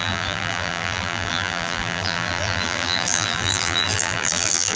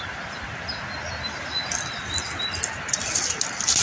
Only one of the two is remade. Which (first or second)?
first